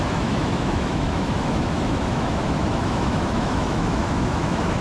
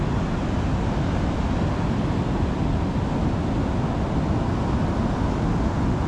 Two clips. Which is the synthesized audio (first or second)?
first